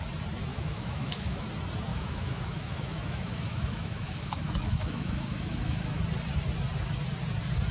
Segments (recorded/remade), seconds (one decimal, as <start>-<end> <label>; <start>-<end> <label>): 0.0-0.5 recorded; 0.5-1.4 remade; 1.4-1.9 recorded; 1.9-6.0 remade; 6.0-7.7 recorded